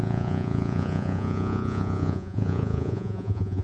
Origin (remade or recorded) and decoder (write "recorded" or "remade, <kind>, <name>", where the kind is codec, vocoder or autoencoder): remade, vocoder, Vocos